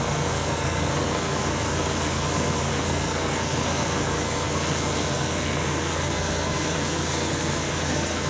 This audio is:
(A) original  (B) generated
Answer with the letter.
B